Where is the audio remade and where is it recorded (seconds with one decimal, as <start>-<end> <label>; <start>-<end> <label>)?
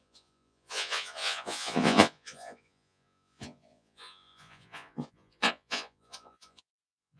0.0-7.2 remade